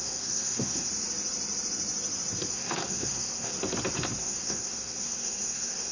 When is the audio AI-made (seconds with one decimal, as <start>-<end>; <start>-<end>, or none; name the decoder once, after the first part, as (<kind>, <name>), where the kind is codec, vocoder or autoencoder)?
0.0-0.9 (codec, SNAC); 2.5-3.5; 4.2-5.9